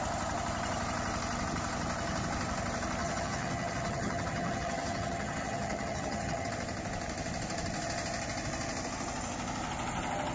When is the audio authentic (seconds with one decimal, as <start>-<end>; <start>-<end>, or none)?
0.0-3.0; 6.5-10.3